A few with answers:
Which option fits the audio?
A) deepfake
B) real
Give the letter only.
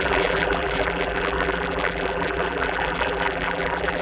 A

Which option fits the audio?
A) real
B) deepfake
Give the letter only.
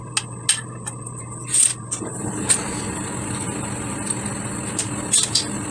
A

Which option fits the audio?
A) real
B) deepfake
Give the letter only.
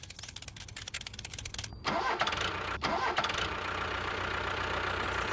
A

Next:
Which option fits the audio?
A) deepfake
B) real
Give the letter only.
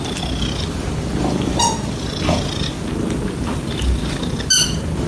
B